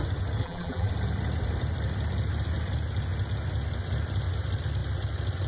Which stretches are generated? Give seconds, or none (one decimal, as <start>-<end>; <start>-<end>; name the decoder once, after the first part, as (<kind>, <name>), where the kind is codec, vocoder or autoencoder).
0.4-0.9 (vocoder, BigVGAN v2)